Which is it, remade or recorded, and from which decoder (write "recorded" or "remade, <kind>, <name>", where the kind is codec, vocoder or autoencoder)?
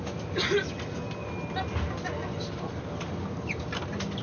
recorded